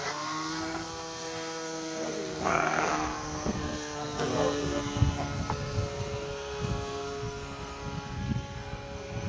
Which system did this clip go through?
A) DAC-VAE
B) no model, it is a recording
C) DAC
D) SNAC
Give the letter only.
D